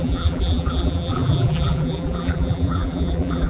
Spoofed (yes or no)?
yes